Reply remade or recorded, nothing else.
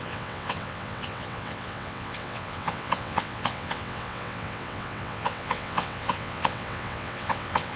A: remade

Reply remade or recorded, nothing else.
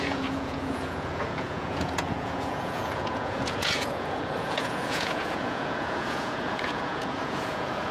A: remade